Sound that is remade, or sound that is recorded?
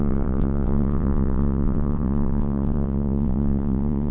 remade